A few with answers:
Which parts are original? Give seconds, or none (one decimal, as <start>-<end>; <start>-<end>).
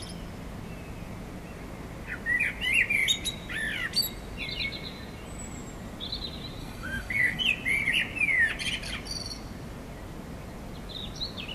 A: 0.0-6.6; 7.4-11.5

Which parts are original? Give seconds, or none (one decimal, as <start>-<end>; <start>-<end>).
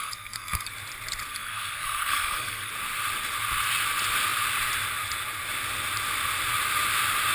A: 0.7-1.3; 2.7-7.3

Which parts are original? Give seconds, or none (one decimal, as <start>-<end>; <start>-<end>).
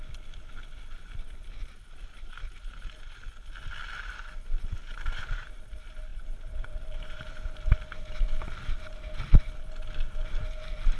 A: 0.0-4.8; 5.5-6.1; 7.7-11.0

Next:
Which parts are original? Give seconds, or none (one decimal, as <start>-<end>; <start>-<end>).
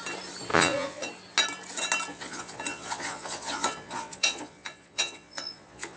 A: 0.0-0.5; 1.1-2.1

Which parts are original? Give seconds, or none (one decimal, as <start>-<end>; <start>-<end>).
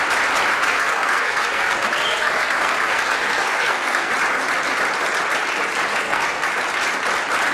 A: 0.0-0.5; 4.1-5.9; 6.5-7.5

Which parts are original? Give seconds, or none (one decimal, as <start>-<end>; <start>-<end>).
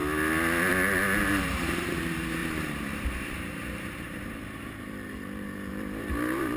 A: 0.0-1.2; 2.0-2.4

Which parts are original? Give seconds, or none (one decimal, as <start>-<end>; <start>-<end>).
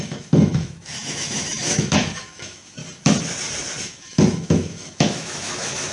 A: 2.8-3.8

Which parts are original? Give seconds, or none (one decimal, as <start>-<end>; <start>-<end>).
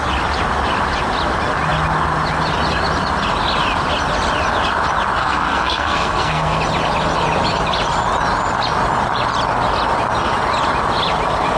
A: 0.0-5.2; 6.6-11.6